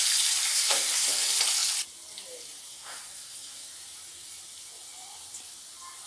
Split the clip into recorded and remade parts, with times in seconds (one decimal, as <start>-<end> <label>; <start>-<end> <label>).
0.0-0.5 recorded; 0.5-1.1 remade; 1.1-2.7 recorded; 2.7-3.7 remade; 3.7-6.1 recorded